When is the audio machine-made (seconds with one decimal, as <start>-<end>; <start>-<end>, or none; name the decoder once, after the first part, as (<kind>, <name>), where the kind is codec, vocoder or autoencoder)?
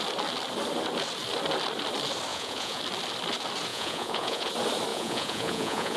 2.3-2.8 (vocoder, Vocos); 3.7-4.5; 4.9-6.0